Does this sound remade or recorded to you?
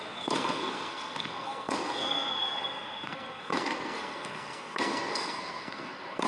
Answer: remade